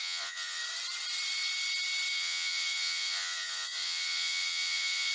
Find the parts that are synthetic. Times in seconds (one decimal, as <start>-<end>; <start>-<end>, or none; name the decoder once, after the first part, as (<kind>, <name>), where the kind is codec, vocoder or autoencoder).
0.0-0.6 (vocoder, Vocos); 2.1-5.1